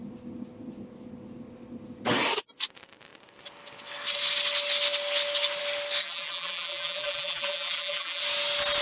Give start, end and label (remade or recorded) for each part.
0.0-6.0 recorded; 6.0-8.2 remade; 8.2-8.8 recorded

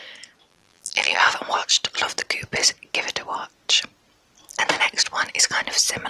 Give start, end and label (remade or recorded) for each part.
0.0-0.5 recorded; 0.5-1.2 remade; 1.2-6.1 recorded

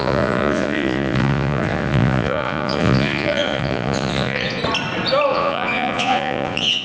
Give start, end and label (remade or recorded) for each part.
0.0-4.6 remade; 4.6-5.3 recorded; 5.3-6.8 remade

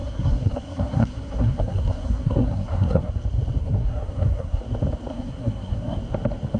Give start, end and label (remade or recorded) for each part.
0.0-3.1 remade; 3.1-3.6 recorded; 3.6-4.6 remade; 4.6-5.1 recorded; 5.1-6.0 remade; 6.0-6.6 recorded